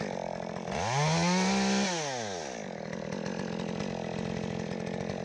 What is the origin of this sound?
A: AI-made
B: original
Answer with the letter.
B